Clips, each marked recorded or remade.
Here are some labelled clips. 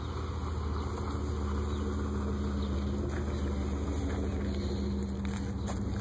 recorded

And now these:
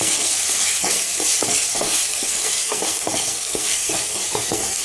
remade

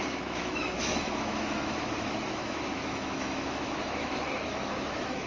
remade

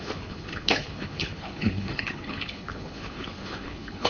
remade